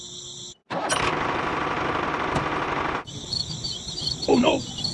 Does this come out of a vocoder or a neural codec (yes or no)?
no